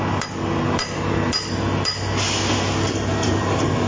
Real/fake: real